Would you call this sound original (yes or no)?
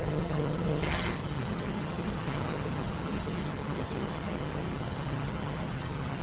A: no